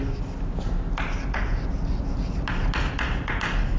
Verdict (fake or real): real